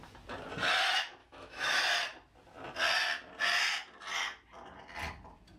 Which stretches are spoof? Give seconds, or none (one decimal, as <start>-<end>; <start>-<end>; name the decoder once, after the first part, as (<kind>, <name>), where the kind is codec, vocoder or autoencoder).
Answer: 1.2-1.8 (autoencoder, DAC-VAE)